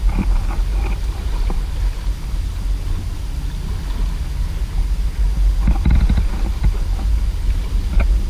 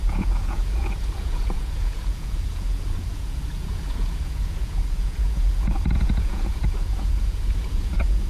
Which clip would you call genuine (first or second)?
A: first